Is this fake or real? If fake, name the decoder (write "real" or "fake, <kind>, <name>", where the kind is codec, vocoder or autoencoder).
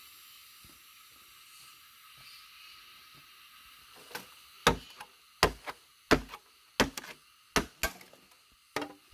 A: real